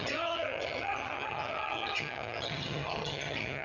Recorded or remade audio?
remade